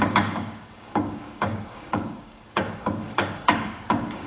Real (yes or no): no